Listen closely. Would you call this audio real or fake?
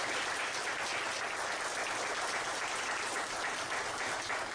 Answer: real